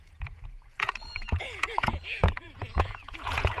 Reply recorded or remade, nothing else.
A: remade